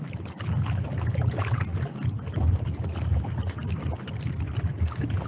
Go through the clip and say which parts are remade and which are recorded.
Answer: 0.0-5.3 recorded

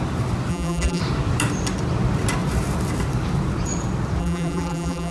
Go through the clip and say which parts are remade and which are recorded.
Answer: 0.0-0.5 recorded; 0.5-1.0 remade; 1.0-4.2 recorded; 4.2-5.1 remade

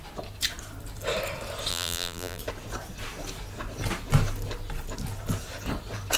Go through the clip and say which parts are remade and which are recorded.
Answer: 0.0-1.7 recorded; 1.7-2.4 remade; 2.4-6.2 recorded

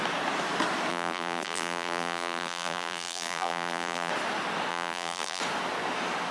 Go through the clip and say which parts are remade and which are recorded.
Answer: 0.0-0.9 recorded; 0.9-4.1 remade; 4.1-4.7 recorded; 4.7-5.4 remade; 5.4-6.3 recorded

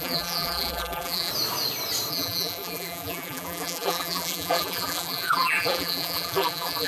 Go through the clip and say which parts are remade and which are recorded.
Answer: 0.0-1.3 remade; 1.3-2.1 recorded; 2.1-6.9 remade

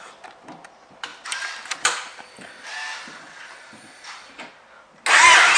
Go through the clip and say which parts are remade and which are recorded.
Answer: 0.0-1.1 recorded; 1.1-4.5 remade; 4.5-5.6 recorded